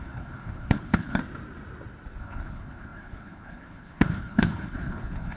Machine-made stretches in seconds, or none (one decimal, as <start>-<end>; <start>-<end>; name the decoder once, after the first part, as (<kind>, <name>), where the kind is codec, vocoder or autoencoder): 0.0-1.2 (codec, HILCodec); 2.2-5.4